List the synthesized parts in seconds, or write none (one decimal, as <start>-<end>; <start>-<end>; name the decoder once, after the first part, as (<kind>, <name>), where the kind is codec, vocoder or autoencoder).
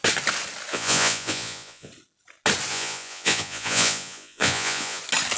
0.7-1.9 (vocoder, Vocos); 2.7-5.0